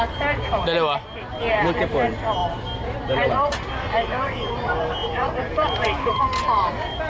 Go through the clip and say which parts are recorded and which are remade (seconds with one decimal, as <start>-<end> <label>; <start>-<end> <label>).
0.0-2.4 recorded; 2.4-3.3 remade; 3.3-5.0 recorded; 5.0-6.2 remade; 6.2-7.1 recorded